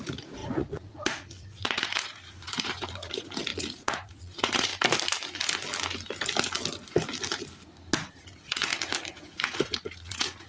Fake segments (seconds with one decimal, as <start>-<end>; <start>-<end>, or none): 0.0-4.7; 8.1-8.7; 9.3-10.5